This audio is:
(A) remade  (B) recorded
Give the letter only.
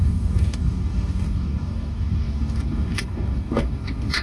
A